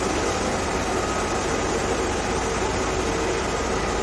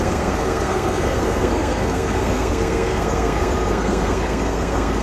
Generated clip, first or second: second